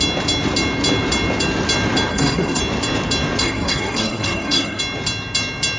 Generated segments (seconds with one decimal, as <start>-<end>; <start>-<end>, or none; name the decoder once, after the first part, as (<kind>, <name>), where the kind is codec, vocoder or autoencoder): 2.1-2.6 (codec, SNAC); 3.4-4.8